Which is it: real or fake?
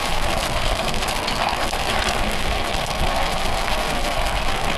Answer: fake